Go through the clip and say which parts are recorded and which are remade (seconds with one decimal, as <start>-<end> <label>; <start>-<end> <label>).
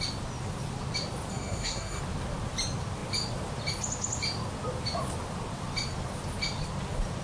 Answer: 0.0-1.3 recorded; 1.3-2.0 remade; 2.0-7.2 recorded